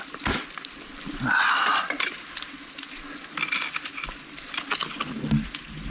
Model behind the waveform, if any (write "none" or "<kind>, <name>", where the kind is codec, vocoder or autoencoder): none